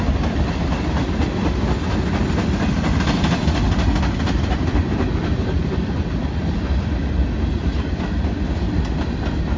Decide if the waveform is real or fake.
real